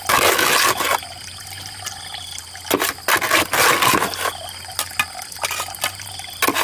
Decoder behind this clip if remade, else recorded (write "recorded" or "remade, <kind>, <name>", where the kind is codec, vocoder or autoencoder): recorded